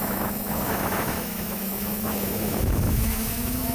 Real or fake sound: fake